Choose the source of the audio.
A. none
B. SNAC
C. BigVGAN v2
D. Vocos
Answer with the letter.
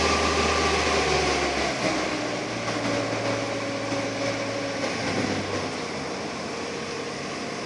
A